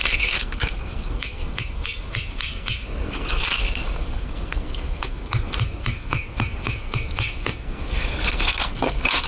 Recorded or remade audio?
remade